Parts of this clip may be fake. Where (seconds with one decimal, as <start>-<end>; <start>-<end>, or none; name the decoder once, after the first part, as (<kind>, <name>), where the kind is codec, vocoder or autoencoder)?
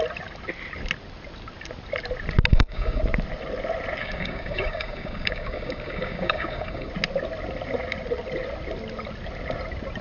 2.5-3.0 (codec, DAC); 4.0-6.9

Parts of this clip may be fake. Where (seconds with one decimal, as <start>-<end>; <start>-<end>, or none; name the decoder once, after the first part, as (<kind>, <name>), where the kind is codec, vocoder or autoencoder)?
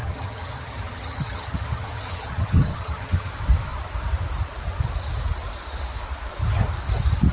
0.0-3.3 (vocoder, HiFi-GAN)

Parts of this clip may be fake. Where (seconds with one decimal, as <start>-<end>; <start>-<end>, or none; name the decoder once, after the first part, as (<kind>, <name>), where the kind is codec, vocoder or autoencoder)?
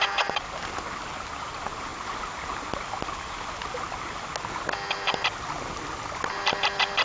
none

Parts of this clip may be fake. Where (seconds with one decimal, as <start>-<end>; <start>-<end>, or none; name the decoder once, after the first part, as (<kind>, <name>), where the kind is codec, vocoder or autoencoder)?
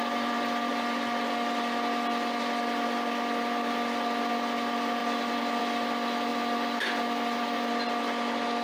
none